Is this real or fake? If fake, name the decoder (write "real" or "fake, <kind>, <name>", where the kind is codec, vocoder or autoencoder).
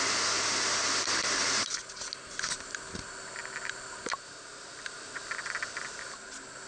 real